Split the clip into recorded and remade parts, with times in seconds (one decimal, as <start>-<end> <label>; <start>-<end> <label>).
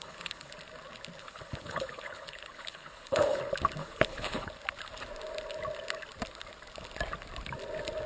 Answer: 0.0-0.5 remade; 0.5-1.2 recorded; 1.2-3.4 remade; 3.4-3.8 recorded; 3.8-4.5 remade; 4.5-8.1 recorded